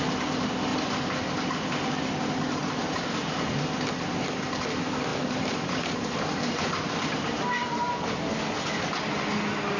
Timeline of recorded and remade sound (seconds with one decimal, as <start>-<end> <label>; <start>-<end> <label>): 0.0-0.7 recorded; 0.7-2.1 remade; 2.1-2.6 recorded; 2.6-3.5 remade; 3.5-5.1 recorded; 5.1-8.1 remade; 8.1-9.8 recorded